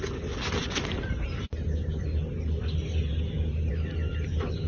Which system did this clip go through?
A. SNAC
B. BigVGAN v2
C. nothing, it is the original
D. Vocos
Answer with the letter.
C